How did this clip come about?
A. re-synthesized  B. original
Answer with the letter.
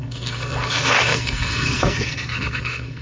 A